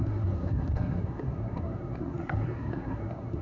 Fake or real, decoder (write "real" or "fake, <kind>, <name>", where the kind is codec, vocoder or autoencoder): fake, codec, SNAC